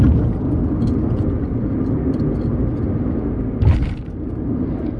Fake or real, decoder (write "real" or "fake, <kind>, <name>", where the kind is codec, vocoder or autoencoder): real